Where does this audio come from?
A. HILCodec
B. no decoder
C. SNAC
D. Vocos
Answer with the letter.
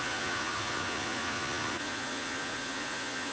D